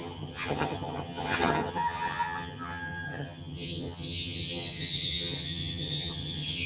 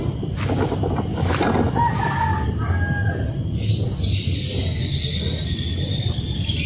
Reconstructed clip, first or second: first